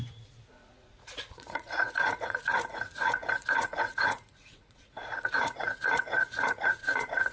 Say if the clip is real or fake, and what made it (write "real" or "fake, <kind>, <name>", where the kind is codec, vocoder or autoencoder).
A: fake, vocoder, Vocos